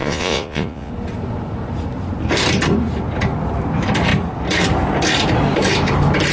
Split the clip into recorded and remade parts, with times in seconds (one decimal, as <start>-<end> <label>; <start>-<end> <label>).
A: 0.0-0.9 remade; 0.9-6.3 recorded